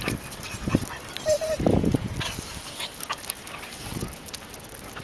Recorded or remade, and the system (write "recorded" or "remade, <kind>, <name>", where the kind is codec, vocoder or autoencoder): recorded